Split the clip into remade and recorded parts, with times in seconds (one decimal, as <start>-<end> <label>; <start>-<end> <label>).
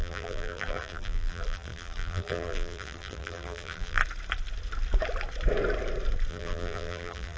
0.0-4.0 remade; 4.0-6.3 recorded; 6.3-7.4 remade